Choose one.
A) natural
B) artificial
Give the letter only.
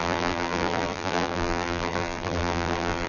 B